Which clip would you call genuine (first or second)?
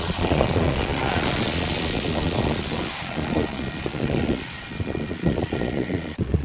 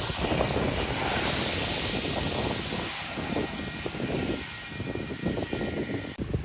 second